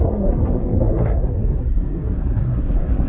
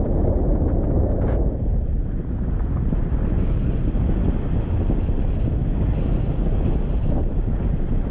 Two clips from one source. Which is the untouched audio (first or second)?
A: second